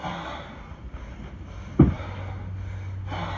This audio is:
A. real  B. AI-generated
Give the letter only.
A